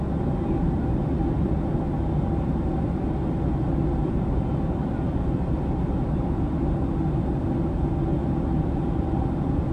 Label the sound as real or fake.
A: real